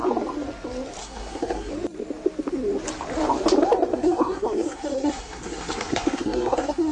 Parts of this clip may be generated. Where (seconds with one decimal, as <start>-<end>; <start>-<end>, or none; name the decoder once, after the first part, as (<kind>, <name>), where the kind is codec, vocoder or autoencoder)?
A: 1.0-1.7 (codec, SNAC); 3.9-6.9